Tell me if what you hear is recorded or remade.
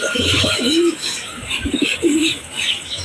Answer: remade